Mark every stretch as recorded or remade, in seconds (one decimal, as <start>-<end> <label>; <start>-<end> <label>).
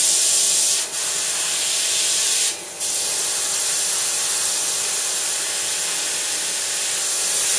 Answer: 0.0-7.6 recorded